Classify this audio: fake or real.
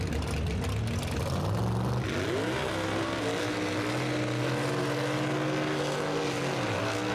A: real